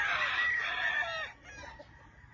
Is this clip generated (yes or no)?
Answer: no